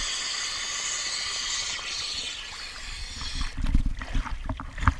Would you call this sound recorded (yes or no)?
yes